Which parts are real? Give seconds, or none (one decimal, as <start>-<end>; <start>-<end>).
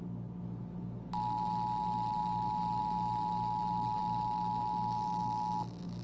0.0-6.0